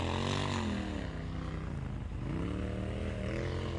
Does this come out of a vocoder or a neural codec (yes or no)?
no